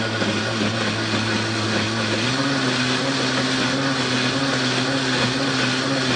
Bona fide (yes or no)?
yes